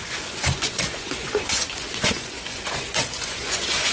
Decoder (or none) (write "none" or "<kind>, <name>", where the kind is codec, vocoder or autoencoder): vocoder, Vocos